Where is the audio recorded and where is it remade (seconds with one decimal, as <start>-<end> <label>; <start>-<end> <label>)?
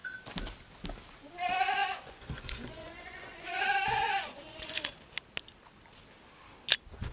0.0-1.8 recorded; 1.8-4.8 remade; 4.8-7.1 recorded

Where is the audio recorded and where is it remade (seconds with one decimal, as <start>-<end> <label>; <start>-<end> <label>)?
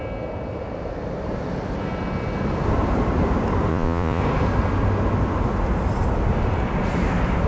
0.0-3.7 recorded; 3.7-4.2 remade; 4.2-7.5 recorded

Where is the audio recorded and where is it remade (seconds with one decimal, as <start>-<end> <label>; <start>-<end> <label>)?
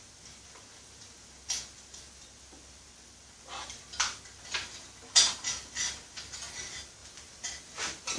0.0-8.2 recorded